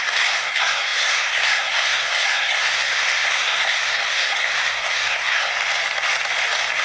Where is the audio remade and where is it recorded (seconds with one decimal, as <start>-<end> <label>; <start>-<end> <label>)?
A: 0.0-5.5 remade; 5.5-6.8 recorded